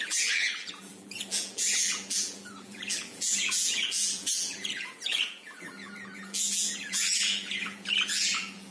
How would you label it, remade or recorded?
remade